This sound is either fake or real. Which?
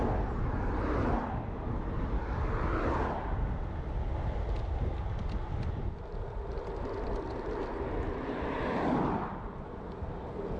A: real